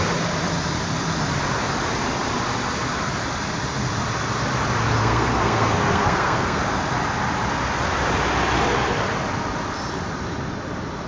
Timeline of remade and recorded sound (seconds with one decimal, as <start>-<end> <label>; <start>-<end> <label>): 0.0-5.0 recorded; 5.0-6.6 remade; 6.6-11.1 recorded